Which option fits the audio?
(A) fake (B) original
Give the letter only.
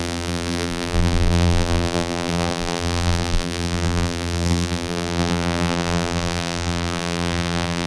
A